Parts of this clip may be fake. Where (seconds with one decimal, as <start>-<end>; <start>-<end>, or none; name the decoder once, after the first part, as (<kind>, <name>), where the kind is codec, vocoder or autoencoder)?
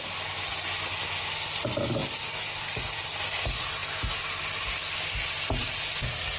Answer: none